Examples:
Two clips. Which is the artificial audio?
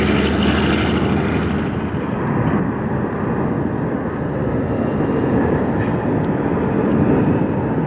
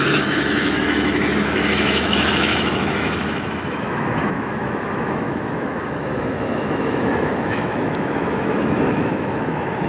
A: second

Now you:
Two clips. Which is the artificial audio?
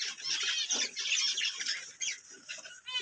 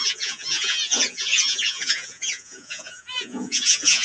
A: second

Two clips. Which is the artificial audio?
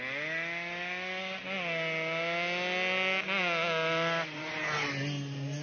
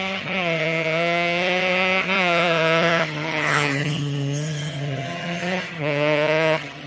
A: second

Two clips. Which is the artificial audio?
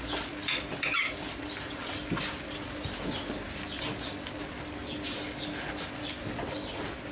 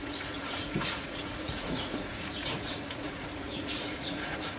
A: second